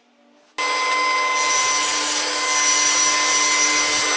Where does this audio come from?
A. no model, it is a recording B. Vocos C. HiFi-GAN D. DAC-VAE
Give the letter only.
A